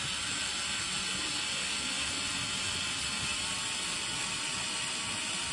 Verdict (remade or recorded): recorded